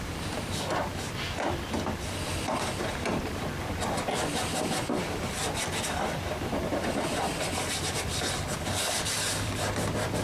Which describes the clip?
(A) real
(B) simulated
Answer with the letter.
B